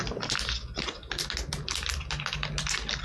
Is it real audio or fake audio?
real